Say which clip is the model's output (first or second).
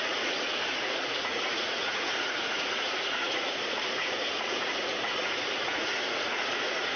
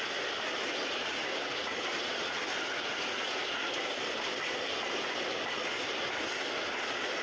first